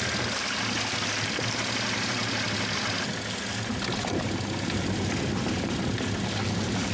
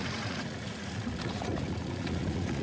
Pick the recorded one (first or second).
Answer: first